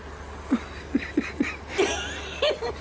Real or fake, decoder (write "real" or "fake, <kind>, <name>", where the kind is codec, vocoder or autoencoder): real